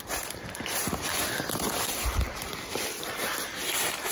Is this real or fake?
fake